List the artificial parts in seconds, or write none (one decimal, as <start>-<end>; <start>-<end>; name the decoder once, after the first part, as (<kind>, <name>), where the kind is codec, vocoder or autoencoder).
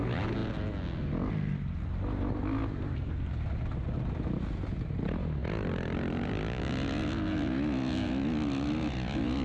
none